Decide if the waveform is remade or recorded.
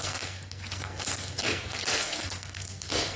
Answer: remade